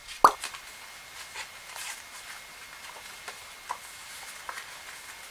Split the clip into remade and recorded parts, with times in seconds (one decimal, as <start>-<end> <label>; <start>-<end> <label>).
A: 0.0-5.3 recorded